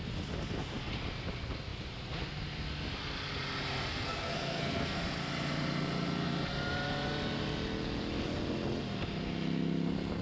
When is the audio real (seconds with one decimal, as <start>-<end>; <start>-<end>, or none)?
0.0-3.9; 5.0-10.2